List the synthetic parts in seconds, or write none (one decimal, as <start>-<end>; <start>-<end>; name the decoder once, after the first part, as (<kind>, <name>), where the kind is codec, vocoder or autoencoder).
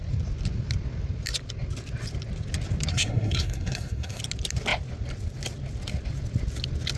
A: 2.9-4.2 (codec, SNAC)